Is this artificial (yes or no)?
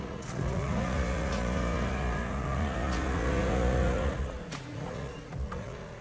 yes